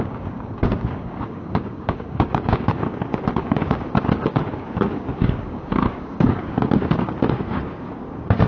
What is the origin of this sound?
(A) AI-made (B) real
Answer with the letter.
A